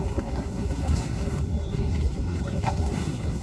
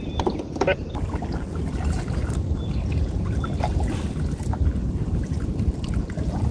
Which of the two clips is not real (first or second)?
first